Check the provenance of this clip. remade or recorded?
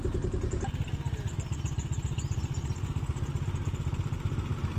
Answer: recorded